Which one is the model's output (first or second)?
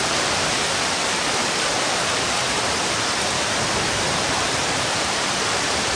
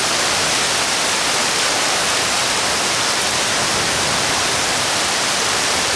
first